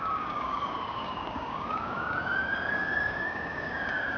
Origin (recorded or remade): remade